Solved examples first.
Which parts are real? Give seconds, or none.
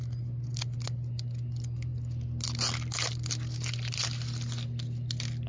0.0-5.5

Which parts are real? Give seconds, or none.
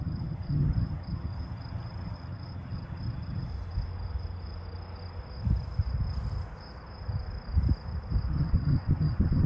3.5-8.3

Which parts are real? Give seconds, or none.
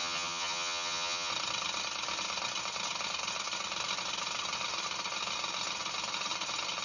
1.3-6.8